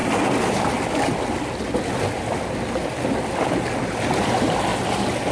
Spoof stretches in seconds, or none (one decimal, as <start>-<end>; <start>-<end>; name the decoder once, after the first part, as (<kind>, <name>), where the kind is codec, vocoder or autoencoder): none